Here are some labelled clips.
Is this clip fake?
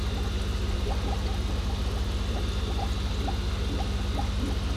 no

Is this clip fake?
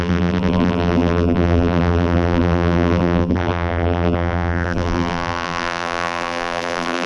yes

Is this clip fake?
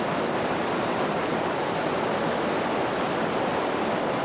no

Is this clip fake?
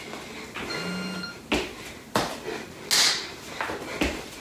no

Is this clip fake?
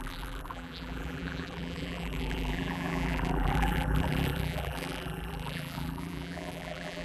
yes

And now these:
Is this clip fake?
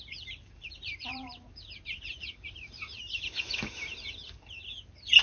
yes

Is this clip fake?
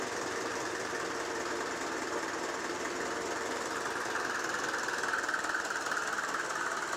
no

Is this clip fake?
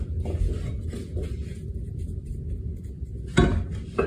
no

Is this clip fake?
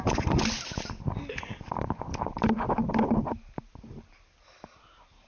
no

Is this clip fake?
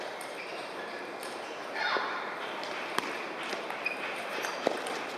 yes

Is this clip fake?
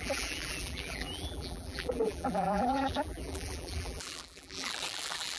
yes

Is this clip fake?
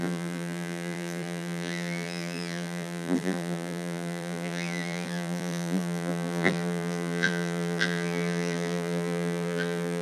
yes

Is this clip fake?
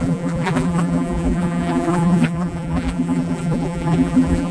yes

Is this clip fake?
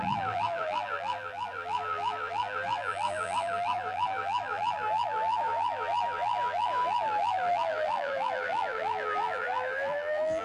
yes